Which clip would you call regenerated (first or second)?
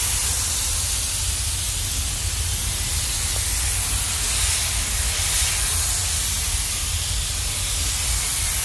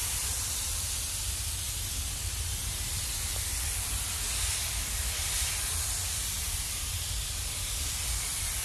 second